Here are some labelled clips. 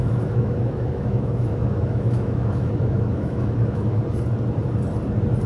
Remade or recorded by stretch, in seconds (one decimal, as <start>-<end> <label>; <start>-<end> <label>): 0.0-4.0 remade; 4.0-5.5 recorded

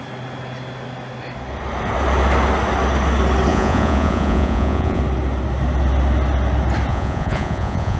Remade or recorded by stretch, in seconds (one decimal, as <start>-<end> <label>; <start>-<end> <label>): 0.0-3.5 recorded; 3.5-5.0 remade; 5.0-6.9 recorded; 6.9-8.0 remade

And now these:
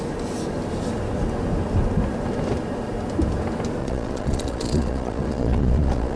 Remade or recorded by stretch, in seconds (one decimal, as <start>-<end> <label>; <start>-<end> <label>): 0.0-3.8 recorded; 3.8-6.2 remade

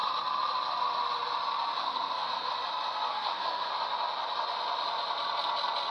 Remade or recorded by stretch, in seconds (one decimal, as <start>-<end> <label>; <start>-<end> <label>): 0.0-1.8 recorded; 1.8-2.5 remade; 2.5-3.1 recorded; 3.1-3.7 remade; 3.7-5.9 recorded

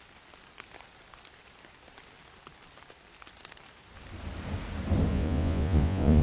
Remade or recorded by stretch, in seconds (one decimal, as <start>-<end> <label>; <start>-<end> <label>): 0.0-5.1 recorded; 5.1-6.2 remade

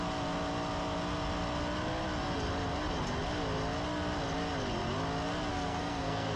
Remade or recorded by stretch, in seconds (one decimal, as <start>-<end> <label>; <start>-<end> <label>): 0.0-5.5 recorded; 5.5-6.4 remade

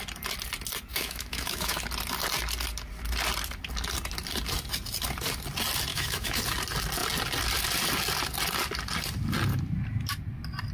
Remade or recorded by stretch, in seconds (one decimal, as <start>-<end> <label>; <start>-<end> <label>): 0.0-0.9 recorded; 0.9-1.8 remade; 1.8-5.9 recorded; 5.9-6.4 remade; 6.4-10.7 recorded

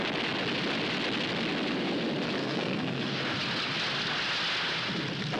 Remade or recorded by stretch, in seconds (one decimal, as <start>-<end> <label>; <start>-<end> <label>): 0.0-2.4 recorded; 2.4-3.2 remade; 3.2-5.4 recorded